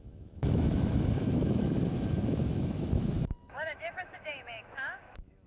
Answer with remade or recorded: remade